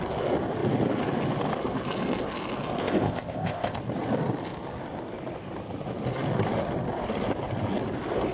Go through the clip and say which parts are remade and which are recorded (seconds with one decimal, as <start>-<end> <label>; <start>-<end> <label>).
0.0-2.8 recorded; 2.8-3.8 remade; 3.8-8.3 recorded